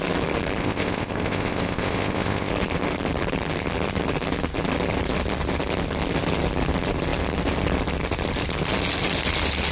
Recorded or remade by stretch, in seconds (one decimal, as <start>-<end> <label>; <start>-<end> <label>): 0.0-0.6 recorded; 0.6-2.5 remade; 2.5-9.7 recorded